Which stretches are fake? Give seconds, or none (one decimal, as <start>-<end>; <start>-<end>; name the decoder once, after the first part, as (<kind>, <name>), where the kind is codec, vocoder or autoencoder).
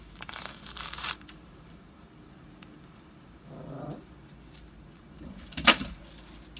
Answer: 0.0-6.0 (vocoder, BigVGAN v2)